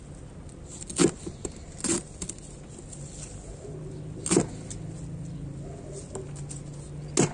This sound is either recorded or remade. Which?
recorded